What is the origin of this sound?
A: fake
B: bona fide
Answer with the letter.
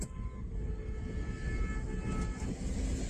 B